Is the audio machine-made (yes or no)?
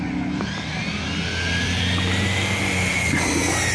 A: no